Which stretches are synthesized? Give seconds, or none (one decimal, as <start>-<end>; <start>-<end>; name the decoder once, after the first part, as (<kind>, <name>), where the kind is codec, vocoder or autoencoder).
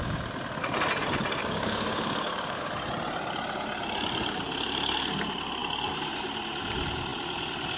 1.4-2.7 (codec, DAC)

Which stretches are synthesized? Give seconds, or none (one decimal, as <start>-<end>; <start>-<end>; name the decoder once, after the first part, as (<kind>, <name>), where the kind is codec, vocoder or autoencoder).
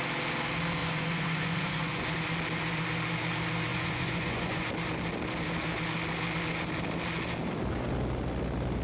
0.8-2.0 (vocoder, Vocos); 3.7-4.7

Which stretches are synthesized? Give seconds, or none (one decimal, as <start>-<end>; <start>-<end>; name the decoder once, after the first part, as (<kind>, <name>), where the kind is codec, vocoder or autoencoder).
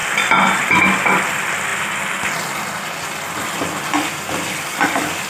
none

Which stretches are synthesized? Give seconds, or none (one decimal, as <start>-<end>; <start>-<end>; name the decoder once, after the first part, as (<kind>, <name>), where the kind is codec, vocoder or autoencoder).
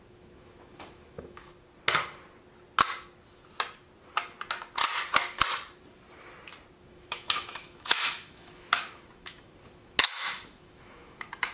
0.0-1.5 (autoencoder, DAC-VAE); 6.8-11.5